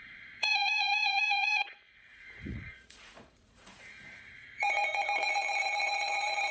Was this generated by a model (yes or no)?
yes